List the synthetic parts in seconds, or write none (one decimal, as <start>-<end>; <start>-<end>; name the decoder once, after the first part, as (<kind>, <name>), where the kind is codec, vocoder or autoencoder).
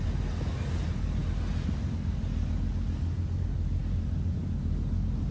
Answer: none